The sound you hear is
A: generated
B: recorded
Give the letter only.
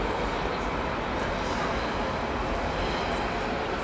B